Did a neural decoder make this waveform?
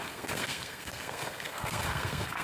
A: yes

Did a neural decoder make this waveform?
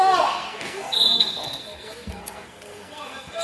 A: yes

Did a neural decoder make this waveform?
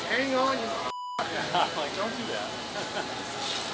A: no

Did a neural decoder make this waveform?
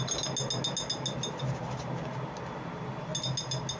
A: no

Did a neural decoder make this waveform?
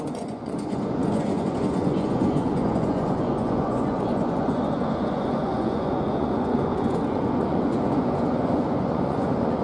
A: yes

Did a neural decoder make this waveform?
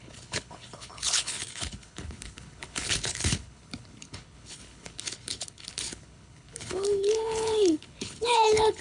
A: yes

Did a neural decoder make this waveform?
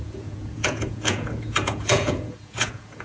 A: yes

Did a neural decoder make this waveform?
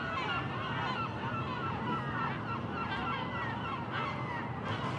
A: no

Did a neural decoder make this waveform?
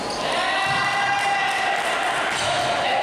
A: no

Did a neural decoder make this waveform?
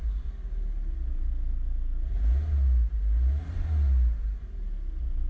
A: no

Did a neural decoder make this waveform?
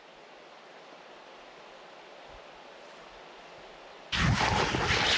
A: no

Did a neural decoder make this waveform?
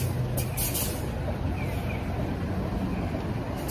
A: no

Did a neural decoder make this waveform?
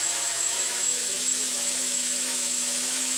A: yes